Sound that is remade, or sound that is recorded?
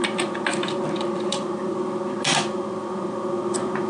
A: recorded